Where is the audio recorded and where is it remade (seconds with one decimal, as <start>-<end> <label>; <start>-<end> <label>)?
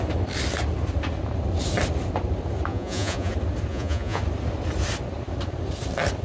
0.0-2.7 recorded; 2.7-3.3 remade; 3.3-3.7 recorded; 3.7-4.2 remade; 4.2-6.2 recorded